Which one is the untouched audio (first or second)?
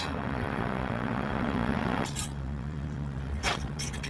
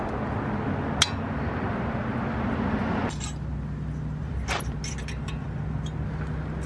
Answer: second